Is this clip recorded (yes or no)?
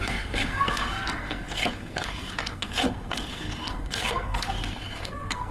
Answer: no